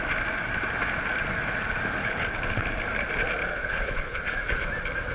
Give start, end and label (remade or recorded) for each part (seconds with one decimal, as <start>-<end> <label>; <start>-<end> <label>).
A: 0.0-2.0 recorded; 2.0-2.6 remade; 2.6-3.6 recorded; 3.6-4.2 remade; 4.2-5.1 recorded